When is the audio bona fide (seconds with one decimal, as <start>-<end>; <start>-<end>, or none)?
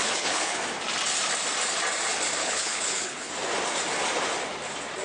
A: 0.6-2.4; 3.3-5.0